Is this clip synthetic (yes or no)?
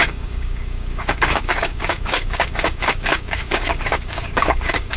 yes